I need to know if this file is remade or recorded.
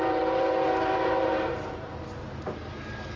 remade